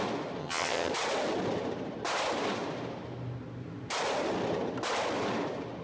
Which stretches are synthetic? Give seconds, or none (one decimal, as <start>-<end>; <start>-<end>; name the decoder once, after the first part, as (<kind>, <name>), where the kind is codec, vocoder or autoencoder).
0.4-0.9 (vocoder, HiFi-GAN)